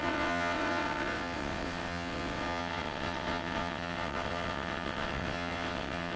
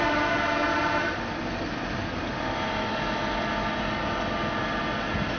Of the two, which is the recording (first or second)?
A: second